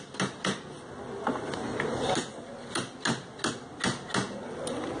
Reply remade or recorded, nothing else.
recorded